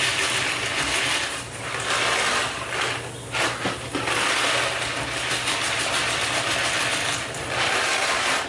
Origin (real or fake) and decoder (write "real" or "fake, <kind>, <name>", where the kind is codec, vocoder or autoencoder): real